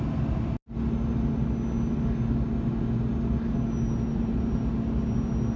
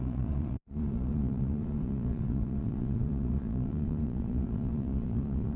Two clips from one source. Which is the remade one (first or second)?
second